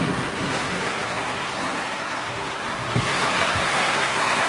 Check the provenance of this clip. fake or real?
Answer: fake